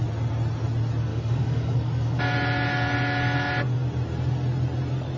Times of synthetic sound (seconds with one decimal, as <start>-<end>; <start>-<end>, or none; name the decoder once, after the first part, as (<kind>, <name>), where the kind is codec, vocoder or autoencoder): 1.1-2.2 (codec, DAC)